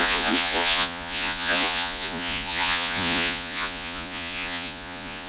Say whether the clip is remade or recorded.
remade